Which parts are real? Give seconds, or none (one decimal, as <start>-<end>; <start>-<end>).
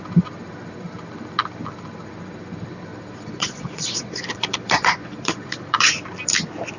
0.0-2.9; 5.9-6.8